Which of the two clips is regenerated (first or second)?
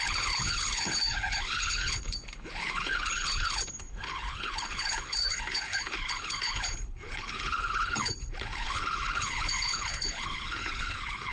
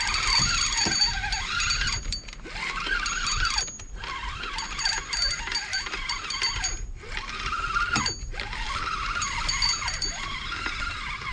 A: first